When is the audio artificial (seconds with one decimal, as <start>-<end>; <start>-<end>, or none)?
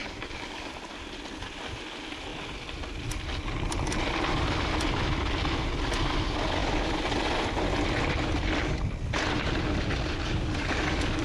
0.0-0.7; 10.3-11.2